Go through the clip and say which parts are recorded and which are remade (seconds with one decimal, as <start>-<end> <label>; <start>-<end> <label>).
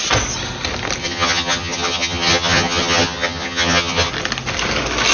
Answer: 0.0-1.0 recorded; 1.0-4.1 remade; 4.1-5.1 recorded